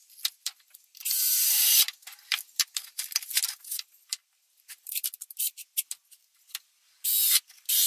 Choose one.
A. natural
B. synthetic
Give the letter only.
A